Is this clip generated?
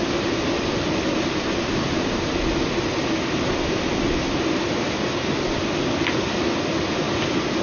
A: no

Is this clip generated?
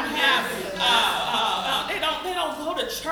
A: no